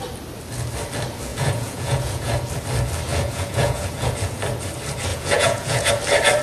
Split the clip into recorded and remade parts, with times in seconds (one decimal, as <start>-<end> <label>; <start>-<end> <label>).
0.0-1.3 recorded; 1.3-2.3 remade; 2.3-3.1 recorded; 3.1-4.1 remade; 4.1-5.1 recorded; 5.1-5.9 remade; 5.9-6.4 recorded